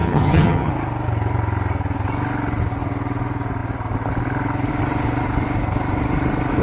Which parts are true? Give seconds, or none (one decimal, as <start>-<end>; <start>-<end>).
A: 0.7-6.6